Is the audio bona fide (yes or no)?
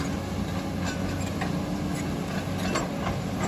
yes